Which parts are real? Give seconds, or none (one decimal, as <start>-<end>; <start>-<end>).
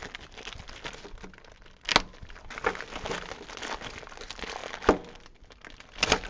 0.0-6.3